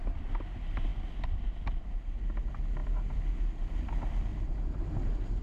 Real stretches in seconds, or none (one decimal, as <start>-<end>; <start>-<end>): 0.0-4.3